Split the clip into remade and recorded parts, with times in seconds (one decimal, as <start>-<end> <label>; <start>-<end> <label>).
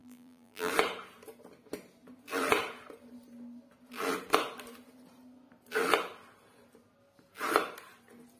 0.0-0.7 remade; 0.7-8.4 recorded